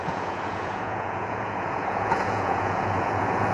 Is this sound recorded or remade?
remade